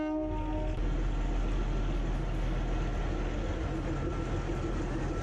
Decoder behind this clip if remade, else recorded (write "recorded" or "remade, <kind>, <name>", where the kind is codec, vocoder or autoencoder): recorded